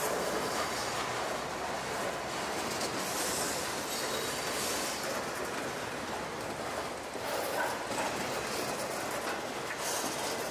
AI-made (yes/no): no